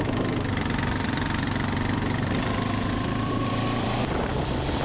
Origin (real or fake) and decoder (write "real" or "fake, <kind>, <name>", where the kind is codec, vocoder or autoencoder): fake, vocoder, BigVGAN v2